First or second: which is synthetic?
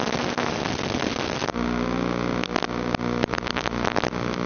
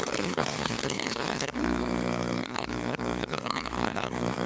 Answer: second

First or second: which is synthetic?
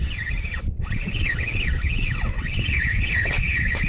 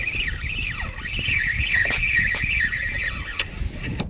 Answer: first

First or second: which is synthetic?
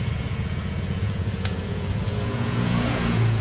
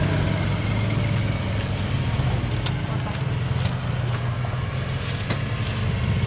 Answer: first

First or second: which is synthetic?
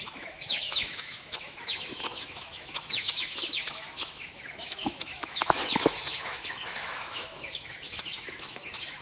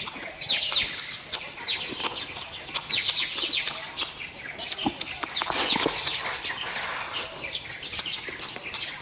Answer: first